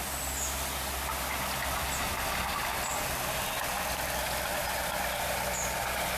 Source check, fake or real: real